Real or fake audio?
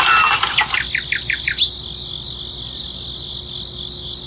real